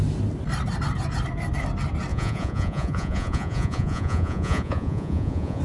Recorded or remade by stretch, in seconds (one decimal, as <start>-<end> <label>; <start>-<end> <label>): 0.0-2.1 recorded; 2.1-5.6 remade